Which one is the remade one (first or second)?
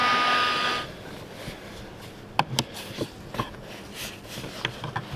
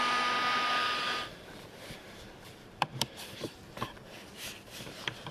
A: second